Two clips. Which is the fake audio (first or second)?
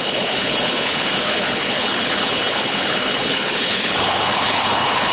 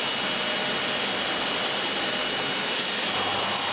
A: first